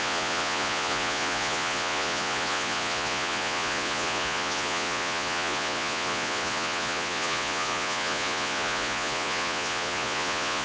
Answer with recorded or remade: remade